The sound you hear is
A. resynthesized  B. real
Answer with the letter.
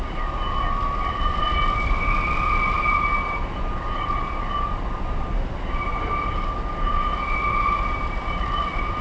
B